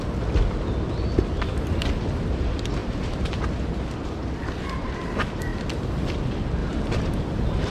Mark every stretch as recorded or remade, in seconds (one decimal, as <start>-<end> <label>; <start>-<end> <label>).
0.0-2.8 recorded; 2.8-3.4 remade; 3.4-6.6 recorded; 6.6-7.2 remade; 7.2-7.7 recorded